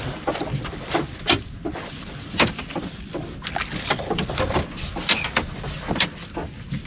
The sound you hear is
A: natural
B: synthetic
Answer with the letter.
A